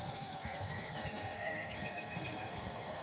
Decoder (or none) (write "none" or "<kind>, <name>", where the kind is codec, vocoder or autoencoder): codec, SNAC